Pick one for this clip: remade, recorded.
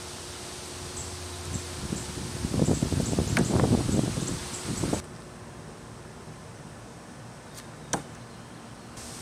recorded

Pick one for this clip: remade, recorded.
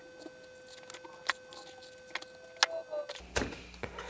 recorded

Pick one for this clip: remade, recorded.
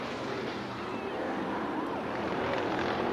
remade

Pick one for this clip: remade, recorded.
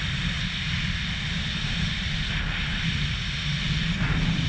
recorded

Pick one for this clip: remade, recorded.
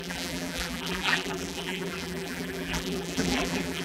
remade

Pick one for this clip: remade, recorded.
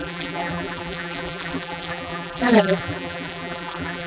remade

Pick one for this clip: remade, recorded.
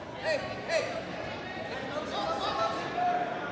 remade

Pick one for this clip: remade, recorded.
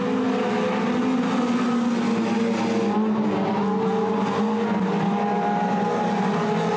recorded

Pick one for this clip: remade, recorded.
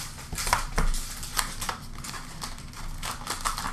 recorded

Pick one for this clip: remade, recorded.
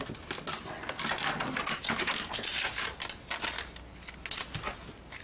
recorded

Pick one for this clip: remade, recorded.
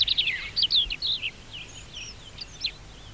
recorded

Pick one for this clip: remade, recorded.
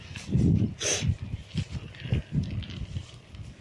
recorded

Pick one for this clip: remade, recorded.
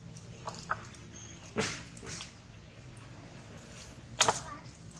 recorded